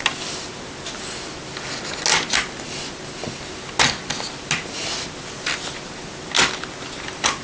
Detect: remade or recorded recorded